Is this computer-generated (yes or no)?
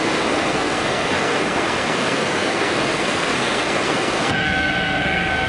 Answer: yes